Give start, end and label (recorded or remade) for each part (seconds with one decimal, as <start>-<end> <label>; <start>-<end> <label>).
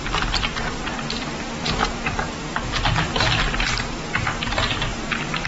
0.0-5.5 remade